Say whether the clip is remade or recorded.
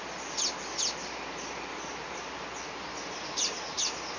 recorded